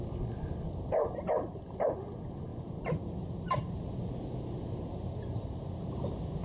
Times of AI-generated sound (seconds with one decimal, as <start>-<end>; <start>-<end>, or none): none